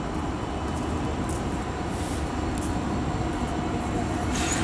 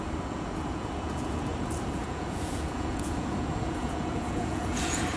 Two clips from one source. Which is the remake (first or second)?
second